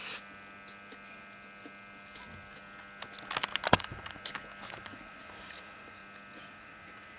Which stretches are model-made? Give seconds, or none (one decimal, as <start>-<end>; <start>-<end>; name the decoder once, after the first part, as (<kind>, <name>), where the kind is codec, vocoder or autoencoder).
3.7-4.2 (vocoder, Vocos); 4.7-6.0; 6.5-7.2